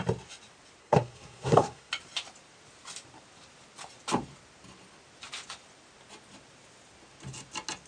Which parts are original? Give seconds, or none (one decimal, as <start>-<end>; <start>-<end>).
0.0-0.8; 1.9-7.9